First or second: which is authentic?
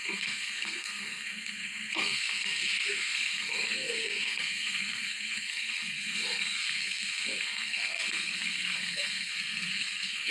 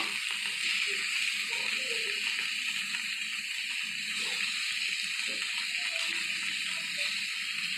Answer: second